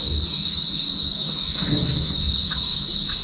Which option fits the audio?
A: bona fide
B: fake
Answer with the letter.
B